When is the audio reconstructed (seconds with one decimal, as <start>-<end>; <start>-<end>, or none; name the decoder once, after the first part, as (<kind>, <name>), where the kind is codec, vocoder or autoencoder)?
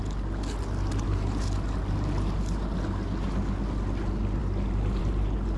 none